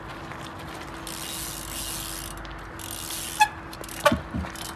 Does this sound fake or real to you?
real